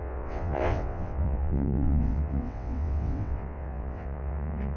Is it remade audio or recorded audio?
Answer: remade